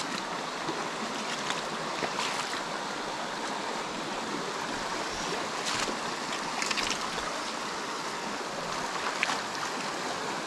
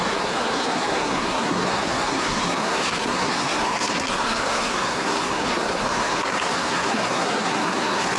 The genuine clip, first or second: first